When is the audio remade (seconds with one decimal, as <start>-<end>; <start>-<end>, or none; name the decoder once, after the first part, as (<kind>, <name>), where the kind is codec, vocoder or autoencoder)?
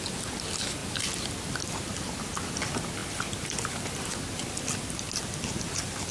3.0-4.2 (vocoder, BigVGAN v2)